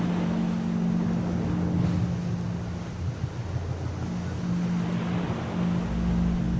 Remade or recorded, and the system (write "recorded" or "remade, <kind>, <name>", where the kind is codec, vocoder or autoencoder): recorded